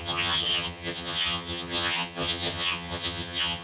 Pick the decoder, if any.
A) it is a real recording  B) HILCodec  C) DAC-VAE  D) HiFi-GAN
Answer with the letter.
D